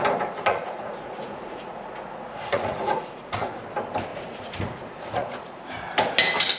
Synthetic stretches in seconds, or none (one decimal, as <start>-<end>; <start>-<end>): 0.5-3.6; 4.1-5.7